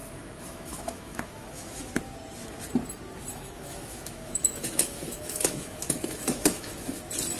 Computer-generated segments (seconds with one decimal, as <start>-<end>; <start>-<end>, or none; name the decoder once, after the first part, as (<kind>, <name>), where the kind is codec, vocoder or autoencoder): 0.0-1.9 (autoencoder, DAC-VAE); 3.3-7.0